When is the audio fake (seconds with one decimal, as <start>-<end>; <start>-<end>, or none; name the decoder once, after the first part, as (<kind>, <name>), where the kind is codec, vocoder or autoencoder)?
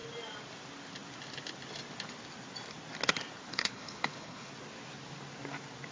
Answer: 3.5-4.5 (codec, HILCodec)